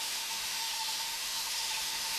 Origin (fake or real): fake